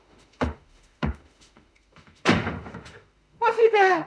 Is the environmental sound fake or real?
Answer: fake